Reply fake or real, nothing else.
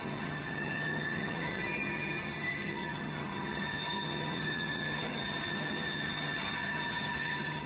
fake